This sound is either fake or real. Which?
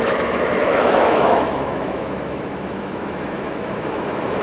fake